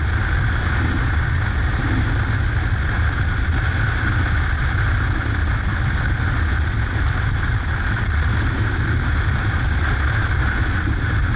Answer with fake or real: real